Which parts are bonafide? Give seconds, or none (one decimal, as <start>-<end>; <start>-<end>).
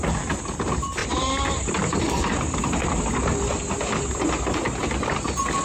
0.0-1.0; 1.7-5.6